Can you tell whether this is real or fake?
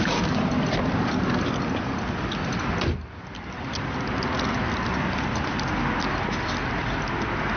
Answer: real